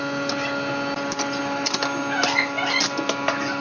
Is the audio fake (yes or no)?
no